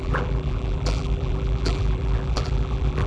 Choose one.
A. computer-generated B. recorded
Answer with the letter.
A